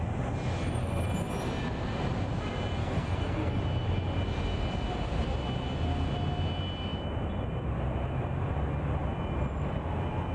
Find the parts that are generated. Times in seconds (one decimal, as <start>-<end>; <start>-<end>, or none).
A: 2.8-3.6